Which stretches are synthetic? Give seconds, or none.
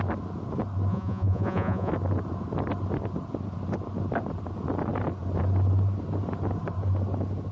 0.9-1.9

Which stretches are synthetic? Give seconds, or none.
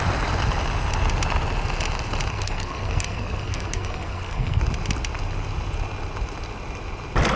2.3-4.6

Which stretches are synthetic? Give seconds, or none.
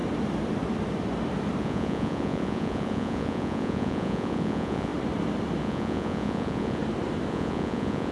1.6-4.9; 5.6-6.8; 7.3-8.1